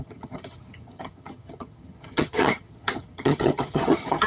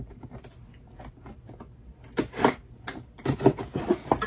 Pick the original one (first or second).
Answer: second